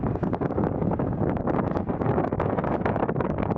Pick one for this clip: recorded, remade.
remade